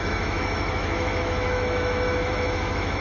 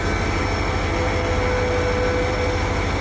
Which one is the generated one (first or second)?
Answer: first